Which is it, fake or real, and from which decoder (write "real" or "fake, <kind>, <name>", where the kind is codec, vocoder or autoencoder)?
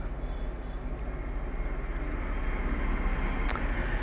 real